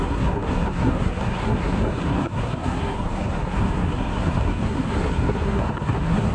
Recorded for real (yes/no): no